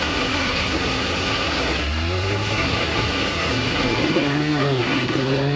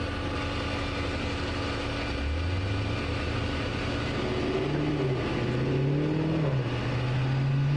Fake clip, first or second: first